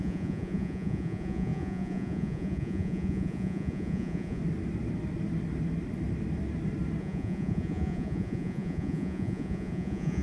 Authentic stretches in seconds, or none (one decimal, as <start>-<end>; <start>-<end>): 4.4-7.0